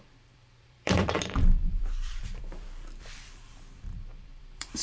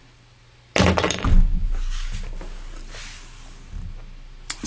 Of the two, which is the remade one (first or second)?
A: first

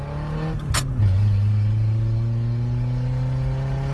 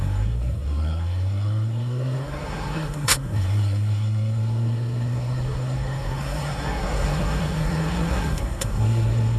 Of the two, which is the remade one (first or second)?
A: second